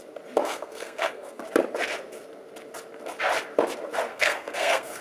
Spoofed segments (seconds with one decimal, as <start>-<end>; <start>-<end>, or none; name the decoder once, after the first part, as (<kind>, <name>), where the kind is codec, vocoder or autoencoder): 0.4-1.4 (codec, SNAC); 4.1-5.0